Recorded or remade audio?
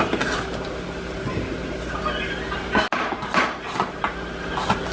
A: recorded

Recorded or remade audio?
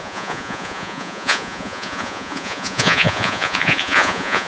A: remade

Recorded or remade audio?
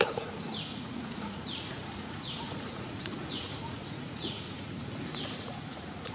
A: remade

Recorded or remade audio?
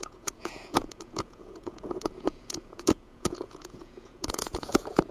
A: remade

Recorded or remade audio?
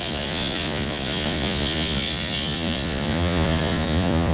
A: remade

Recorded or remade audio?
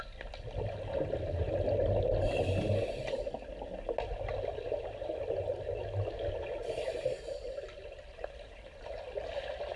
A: recorded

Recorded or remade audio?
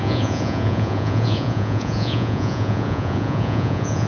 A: remade